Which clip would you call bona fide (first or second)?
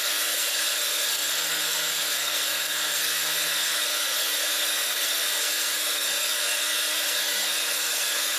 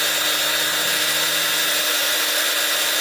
second